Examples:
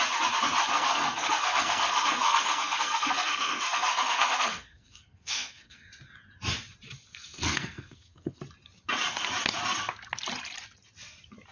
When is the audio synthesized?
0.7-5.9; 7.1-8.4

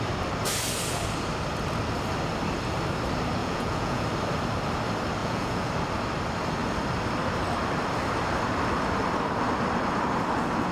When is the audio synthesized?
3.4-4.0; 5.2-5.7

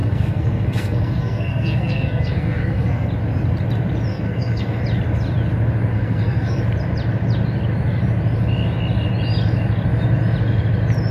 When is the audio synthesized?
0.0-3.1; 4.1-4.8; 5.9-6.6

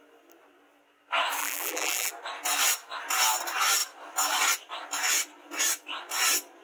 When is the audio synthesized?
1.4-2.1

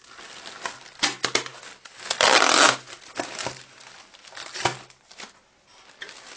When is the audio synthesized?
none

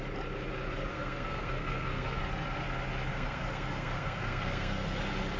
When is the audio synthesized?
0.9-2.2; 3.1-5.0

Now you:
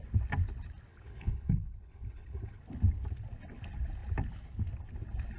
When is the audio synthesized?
0.9-2.6

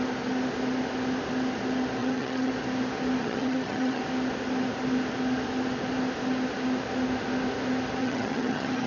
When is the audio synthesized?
2.0-2.5; 3.2-4.0; 8.0-8.9